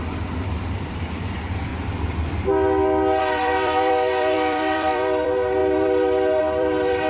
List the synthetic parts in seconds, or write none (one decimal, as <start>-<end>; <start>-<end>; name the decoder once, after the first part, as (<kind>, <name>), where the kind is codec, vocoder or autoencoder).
0.0-1.7 (vocoder, BigVGAN v2); 3.2-7.1